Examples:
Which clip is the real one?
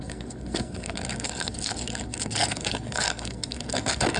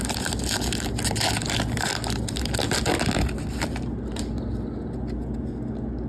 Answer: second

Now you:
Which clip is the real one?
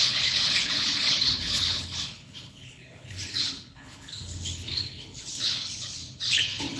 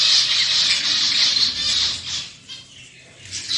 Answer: second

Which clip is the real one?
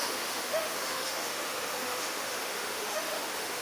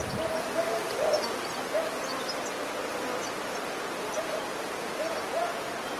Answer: second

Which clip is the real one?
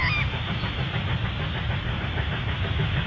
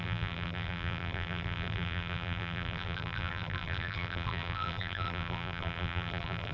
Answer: first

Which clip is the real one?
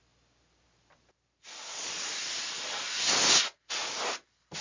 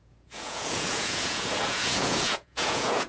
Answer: first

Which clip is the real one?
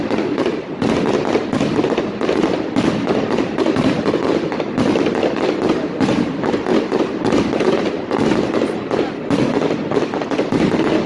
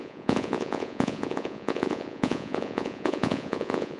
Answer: first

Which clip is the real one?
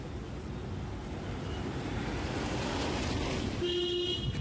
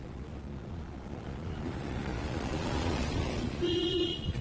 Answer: first